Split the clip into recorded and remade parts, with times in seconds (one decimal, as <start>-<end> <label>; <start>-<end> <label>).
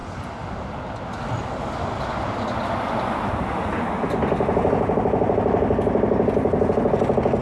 0.0-7.4 recorded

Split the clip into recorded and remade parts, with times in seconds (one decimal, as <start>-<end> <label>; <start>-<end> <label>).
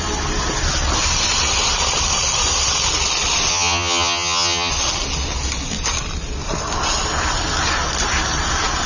0.0-3.5 recorded; 3.5-4.7 remade; 4.7-8.9 recorded